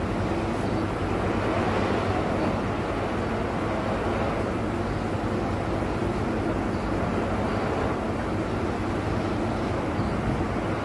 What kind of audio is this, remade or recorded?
recorded